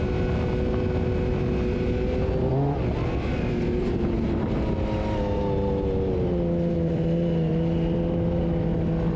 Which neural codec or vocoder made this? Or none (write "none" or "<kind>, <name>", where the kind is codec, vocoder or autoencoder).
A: none